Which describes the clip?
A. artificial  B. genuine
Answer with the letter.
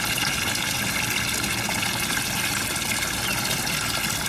B